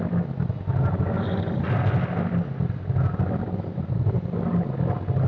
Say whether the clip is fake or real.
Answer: real